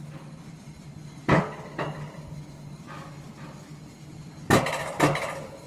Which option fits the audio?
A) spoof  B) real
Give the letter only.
B